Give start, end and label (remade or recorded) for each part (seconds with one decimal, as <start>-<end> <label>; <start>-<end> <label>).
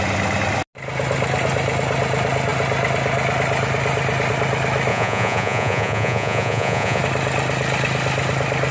0.0-4.9 recorded; 4.9-7.0 remade; 7.0-8.7 recorded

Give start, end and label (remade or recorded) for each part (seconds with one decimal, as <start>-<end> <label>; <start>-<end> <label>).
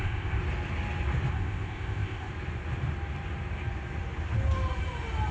0.0-0.4 remade; 0.4-1.3 recorded; 1.3-2.3 remade; 2.3-5.3 recorded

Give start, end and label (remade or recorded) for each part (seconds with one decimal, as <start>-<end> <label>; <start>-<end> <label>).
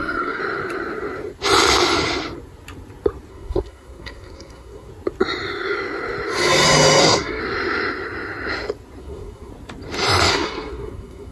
0.0-0.4 remade; 0.4-3.3 recorded; 3.3-4.9 remade; 4.9-7.0 recorded; 7.0-7.4 remade; 7.4-9.0 recorded; 9.0-9.5 remade; 9.5-10.3 recorded; 10.3-11.3 remade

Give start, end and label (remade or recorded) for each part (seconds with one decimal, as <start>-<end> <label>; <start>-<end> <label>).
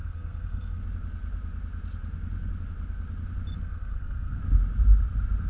0.0-0.8 remade; 0.8-3.6 recorded; 3.6-4.4 remade; 4.4-5.5 recorded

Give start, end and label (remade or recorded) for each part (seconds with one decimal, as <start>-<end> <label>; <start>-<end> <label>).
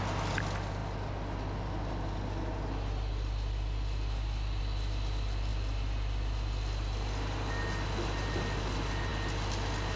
0.0-10.0 recorded